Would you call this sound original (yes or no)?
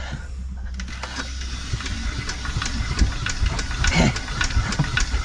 yes